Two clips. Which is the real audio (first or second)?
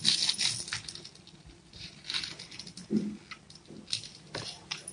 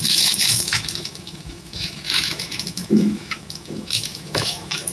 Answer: first